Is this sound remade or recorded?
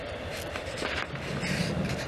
recorded